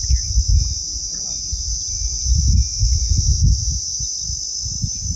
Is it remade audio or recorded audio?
recorded